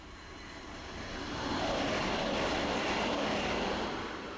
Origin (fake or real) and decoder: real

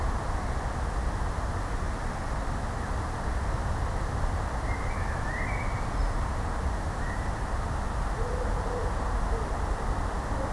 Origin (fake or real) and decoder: real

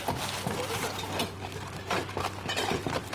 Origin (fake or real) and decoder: real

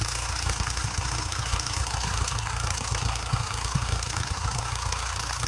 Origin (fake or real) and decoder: fake, codec, SNAC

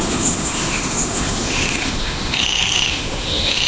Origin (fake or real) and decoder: fake, autoencoder, DAC-VAE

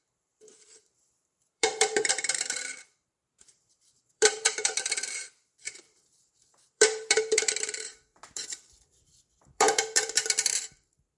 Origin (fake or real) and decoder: fake, vocoder, BigVGAN v2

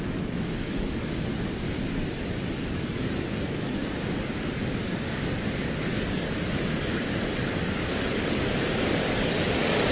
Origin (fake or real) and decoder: fake, codec, DAC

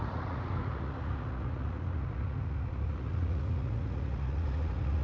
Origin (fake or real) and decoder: fake, vocoder, Vocos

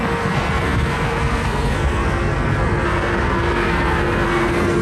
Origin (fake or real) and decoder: fake, codec, SNAC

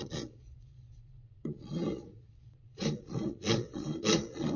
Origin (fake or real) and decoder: fake, vocoder, Vocos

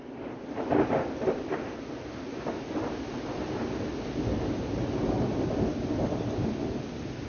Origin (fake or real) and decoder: real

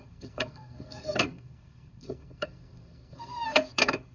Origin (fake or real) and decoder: fake, codec, SNAC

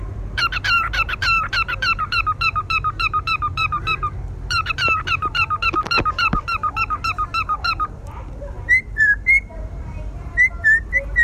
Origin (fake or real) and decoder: fake, vocoder, BigVGAN v2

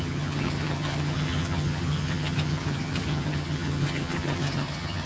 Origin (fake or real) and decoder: fake, vocoder, HiFi-GAN